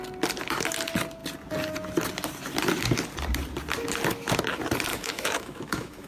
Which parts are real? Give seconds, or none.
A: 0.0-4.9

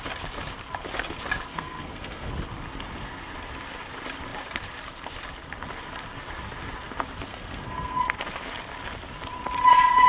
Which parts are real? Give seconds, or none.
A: 0.0-1.5; 2.3-7.3; 8.0-10.1

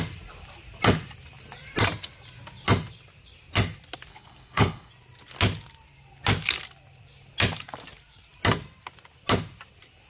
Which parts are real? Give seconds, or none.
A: 0.0-4.1; 4.9-10.1

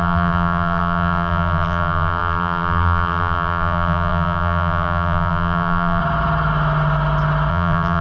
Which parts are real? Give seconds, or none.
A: 6.0-7.5

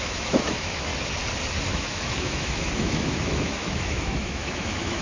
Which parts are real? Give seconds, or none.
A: 0.9-1.7